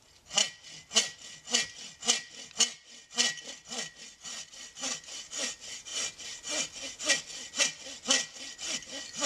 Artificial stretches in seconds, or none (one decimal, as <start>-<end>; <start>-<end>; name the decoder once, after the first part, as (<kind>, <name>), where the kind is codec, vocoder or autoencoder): none